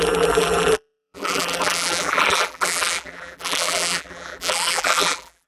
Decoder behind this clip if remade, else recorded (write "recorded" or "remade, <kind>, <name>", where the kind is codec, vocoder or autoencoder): remade, vocoder, BigVGAN v2